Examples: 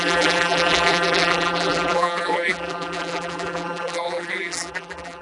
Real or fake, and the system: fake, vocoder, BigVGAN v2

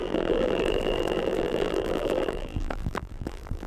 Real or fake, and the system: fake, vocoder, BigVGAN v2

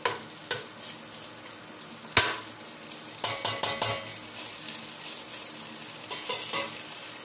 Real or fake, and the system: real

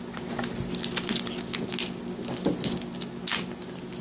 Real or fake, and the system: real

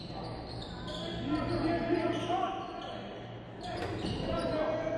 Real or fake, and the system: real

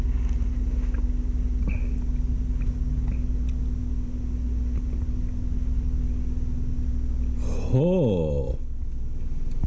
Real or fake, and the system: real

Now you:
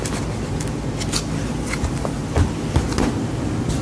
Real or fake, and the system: real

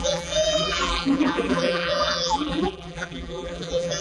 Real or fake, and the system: fake, vocoder, BigVGAN v2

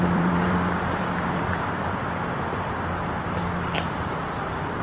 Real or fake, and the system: fake, vocoder, BigVGAN v2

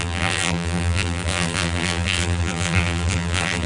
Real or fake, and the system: fake, vocoder, BigVGAN v2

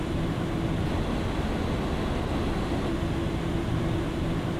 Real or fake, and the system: real